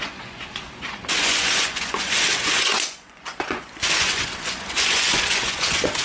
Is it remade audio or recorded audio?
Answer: remade